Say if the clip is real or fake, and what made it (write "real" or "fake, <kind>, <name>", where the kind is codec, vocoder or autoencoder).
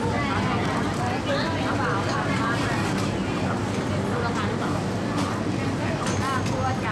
real